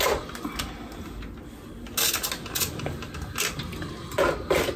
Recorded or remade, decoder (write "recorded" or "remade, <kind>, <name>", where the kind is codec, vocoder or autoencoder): recorded